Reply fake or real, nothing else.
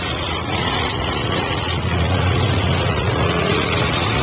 fake